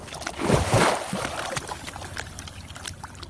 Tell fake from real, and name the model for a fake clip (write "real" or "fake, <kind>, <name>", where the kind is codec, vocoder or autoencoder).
real